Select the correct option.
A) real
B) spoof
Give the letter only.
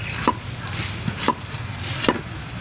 A